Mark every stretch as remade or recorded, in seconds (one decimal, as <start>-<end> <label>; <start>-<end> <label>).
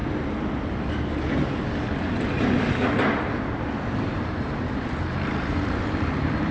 0.0-3.9 recorded; 3.9-6.5 remade